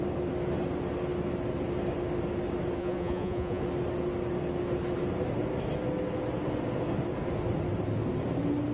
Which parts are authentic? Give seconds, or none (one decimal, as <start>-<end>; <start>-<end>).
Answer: 0.0-2.8; 3.6-8.7